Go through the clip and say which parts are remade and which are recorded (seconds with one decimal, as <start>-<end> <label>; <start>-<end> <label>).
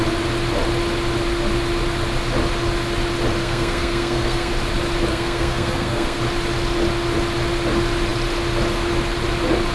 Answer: 0.0-3.4 recorded; 3.4-4.5 remade; 4.5-5.1 recorded; 5.1-6.2 remade; 6.2-9.7 recorded